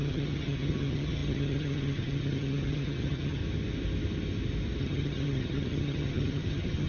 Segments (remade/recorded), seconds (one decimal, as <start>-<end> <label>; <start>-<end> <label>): 0.0-3.4 remade; 3.4-4.8 recorded; 4.8-6.9 remade